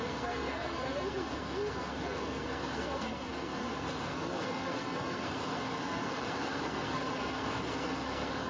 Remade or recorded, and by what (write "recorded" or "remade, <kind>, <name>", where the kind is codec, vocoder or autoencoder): remade, codec, SNAC